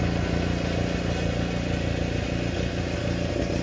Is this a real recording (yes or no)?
yes